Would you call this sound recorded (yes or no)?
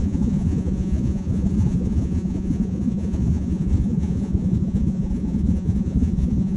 no